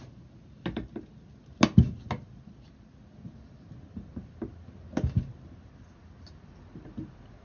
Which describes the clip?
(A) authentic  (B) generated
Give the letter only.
A